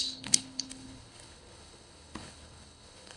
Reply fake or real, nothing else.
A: fake